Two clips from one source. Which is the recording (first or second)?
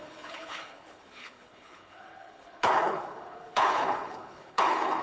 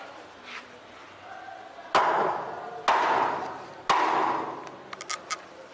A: second